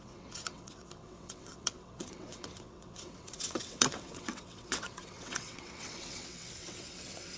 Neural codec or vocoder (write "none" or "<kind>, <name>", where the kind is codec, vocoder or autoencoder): vocoder, WaveNeXt